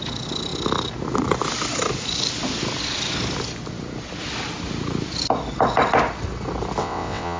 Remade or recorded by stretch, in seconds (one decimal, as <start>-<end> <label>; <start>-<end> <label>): 0.0-6.8 recorded; 6.8-7.4 remade